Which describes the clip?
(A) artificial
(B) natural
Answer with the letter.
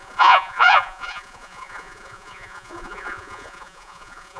A